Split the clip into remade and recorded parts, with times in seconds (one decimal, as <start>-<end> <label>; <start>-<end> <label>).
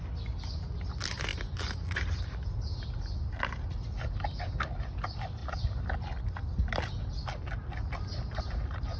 0.0-9.0 recorded